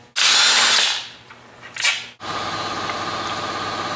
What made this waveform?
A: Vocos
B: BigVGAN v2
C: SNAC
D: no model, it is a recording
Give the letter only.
D